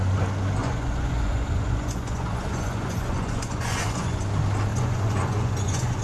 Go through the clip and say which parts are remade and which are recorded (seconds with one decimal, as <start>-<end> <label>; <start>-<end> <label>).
0.0-0.6 recorded; 0.6-4.2 remade; 4.2-4.7 recorded; 4.7-6.0 remade